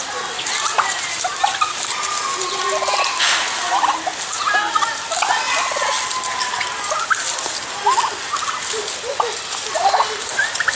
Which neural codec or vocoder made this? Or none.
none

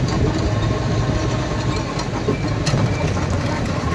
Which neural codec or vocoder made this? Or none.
none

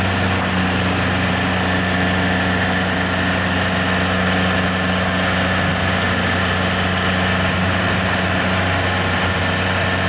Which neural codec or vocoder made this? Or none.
none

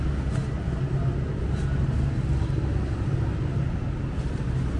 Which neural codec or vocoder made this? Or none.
none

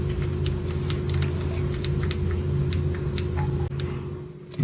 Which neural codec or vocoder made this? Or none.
none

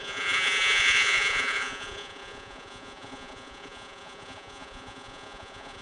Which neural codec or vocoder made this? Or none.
vocoder, Vocos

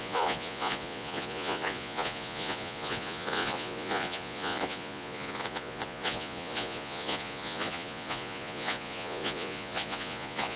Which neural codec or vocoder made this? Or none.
vocoder, Vocos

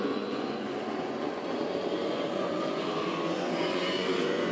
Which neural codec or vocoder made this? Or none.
vocoder, Vocos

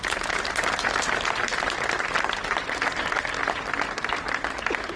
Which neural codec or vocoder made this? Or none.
none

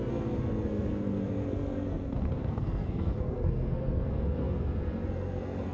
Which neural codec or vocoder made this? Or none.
codec, SNAC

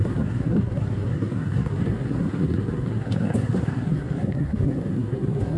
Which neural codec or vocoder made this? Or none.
codec, SNAC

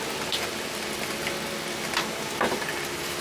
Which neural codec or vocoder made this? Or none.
none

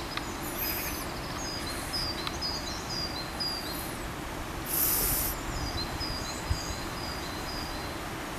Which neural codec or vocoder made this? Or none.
none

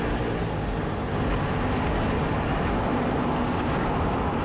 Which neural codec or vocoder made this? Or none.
none